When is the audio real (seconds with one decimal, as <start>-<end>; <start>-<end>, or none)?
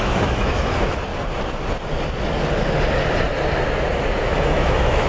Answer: 1.1-4.2